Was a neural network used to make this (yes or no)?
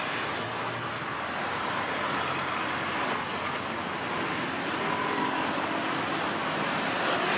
no